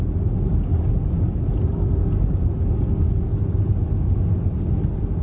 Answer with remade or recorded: recorded